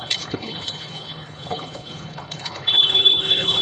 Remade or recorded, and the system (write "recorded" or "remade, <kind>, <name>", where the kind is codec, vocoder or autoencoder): remade, codec, HILCodec